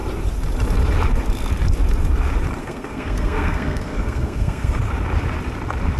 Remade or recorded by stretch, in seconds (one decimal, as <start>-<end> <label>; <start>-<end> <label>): 0.0-2.6 recorded; 2.6-4.8 remade; 4.8-6.0 recorded